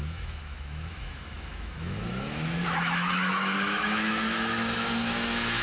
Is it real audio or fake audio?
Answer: fake